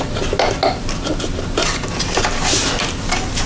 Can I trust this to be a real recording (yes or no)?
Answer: yes